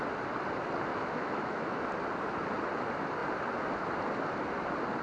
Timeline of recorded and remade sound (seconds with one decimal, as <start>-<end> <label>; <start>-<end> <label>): 0.0-0.9 recorded; 0.9-1.8 remade; 1.8-5.0 recorded